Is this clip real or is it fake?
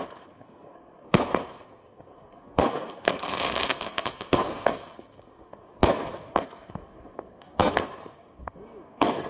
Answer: fake